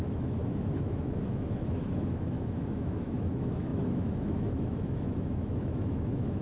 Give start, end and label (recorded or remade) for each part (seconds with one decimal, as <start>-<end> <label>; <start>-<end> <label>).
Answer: 0.0-6.4 remade